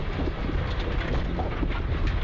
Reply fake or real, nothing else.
real